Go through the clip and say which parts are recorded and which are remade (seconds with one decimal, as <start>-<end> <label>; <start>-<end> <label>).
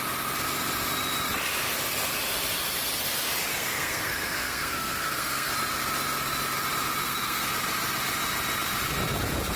0.0-3.5 recorded; 3.5-5.5 remade; 5.5-7.0 recorded; 7.0-7.5 remade; 7.5-9.6 recorded